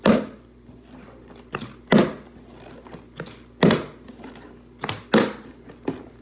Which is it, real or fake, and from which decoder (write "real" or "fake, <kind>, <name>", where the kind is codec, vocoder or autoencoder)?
real